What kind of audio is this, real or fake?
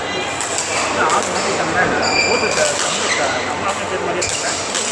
real